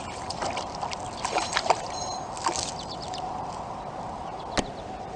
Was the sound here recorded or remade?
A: recorded